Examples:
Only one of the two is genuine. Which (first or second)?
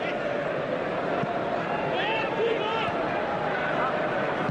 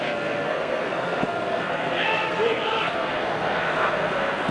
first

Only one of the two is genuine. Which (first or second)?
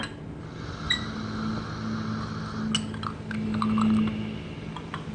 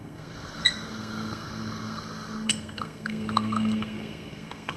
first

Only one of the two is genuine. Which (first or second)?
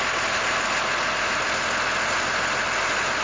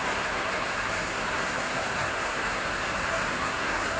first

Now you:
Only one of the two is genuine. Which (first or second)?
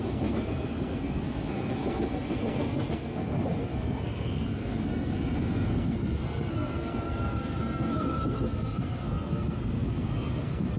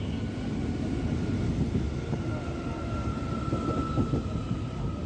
second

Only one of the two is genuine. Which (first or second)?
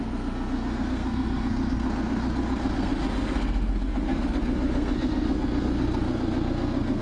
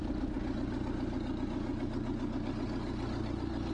second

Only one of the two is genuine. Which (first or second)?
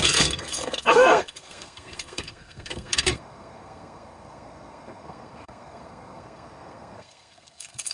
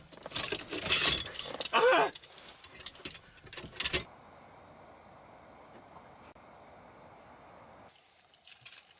second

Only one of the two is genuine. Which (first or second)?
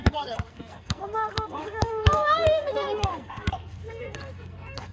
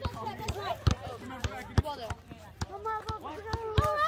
second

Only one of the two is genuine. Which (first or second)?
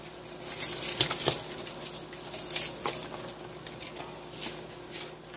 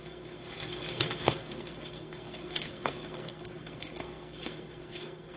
first